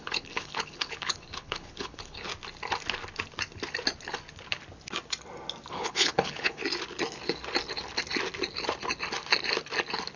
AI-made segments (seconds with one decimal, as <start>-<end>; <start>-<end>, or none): 0.0-2.3; 5.7-6.6